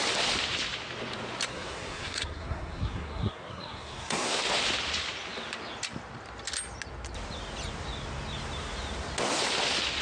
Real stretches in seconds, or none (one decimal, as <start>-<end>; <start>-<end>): 0.0-1.5; 4.4-10.0